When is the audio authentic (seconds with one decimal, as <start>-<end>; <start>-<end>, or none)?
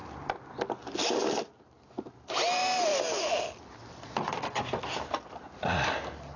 0.0-6.4